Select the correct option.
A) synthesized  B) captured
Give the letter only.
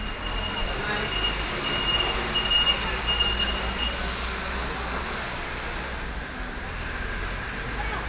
B